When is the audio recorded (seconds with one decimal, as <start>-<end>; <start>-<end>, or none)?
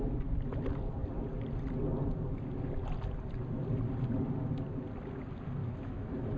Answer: 0.0-5.6